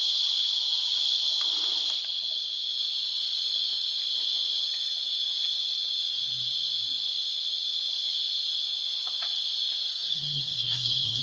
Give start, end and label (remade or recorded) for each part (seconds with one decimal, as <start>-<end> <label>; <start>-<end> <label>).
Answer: 0.0-9.9 recorded; 9.9-11.2 remade